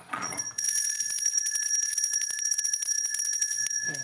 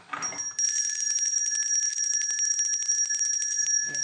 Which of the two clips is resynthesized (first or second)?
first